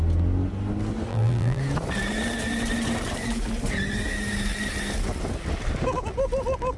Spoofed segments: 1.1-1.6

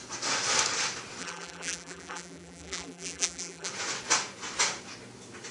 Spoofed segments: 1.2-3.7

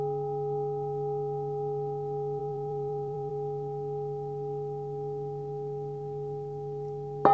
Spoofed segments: 2.4-3.3

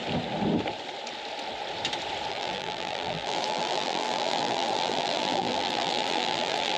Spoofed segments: 2.3-6.8

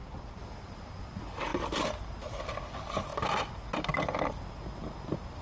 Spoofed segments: 0.0-0.9

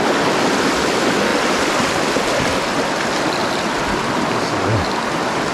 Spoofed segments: 1.3-2.1

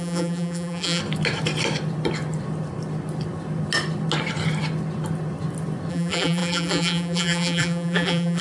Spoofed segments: 0.0-1.0; 5.9-8.4

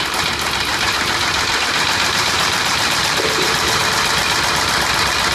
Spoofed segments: 0.7-3.8